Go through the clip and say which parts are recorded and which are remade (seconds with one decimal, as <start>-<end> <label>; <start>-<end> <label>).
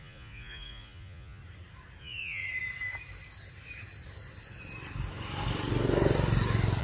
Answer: 0.0-1.4 remade; 1.4-2.0 recorded; 2.0-2.4 remade; 2.4-6.8 recorded